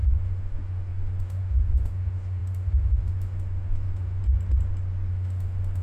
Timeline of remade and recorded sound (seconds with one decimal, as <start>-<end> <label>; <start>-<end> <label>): 0.0-4.2 remade; 4.2-5.1 recorded; 5.1-5.8 remade